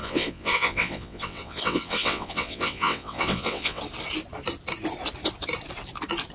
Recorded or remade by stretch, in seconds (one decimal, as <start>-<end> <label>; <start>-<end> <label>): 0.0-3.8 remade; 3.8-6.3 recorded